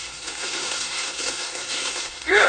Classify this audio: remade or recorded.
remade